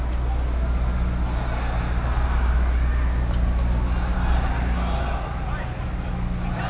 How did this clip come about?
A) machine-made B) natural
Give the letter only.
B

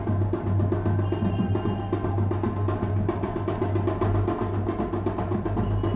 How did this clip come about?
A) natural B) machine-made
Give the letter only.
A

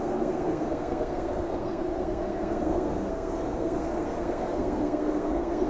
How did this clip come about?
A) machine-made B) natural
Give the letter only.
A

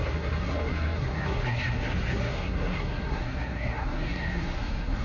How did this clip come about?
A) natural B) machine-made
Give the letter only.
B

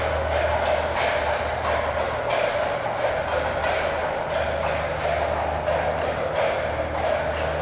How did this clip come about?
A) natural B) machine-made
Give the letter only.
A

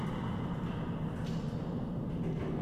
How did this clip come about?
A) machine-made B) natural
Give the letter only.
B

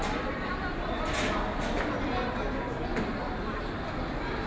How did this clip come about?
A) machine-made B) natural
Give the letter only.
B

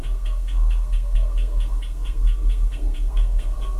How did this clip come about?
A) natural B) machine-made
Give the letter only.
B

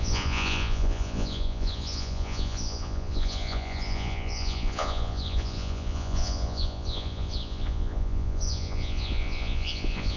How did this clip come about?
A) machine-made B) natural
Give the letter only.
A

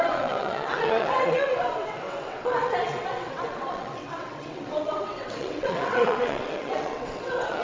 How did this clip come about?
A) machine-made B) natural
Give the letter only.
A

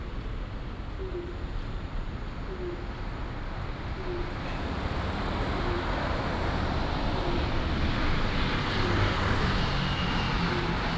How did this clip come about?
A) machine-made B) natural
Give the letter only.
B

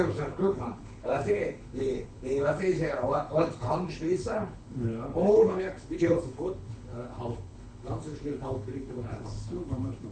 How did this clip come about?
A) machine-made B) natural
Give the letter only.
A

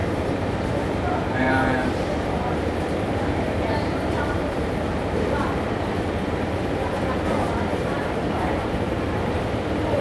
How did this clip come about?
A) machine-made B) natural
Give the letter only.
A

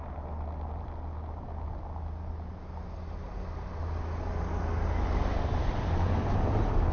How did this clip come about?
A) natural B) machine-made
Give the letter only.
A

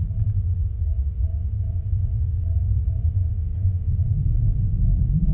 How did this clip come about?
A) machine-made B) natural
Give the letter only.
B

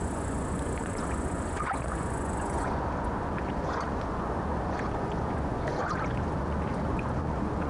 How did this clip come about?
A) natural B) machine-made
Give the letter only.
B